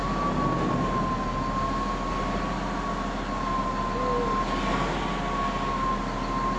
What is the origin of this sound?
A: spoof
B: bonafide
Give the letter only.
B